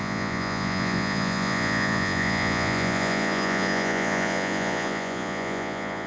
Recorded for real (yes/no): no